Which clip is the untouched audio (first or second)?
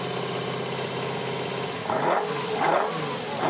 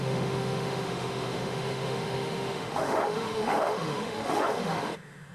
first